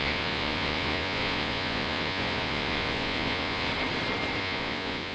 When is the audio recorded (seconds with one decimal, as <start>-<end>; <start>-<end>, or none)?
3.7-4.4